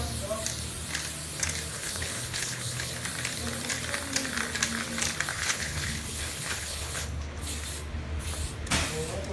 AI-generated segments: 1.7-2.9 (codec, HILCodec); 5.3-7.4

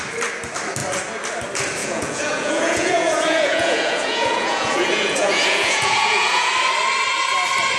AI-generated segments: 1.8-6.5 (vocoder, Vocos)

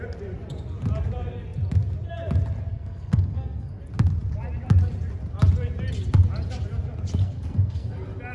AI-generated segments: 2.7-3.8 (codec, SNAC); 7.2-7.9

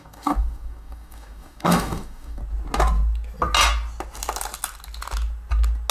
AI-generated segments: 0.0-2.4 (codec, DAC)